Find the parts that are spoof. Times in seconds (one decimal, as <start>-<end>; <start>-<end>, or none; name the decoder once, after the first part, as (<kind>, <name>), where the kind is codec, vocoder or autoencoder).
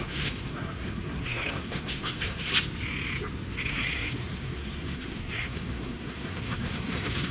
0.0-2.5 (codec, SNAC); 3.7-7.3